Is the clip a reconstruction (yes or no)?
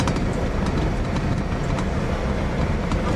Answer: no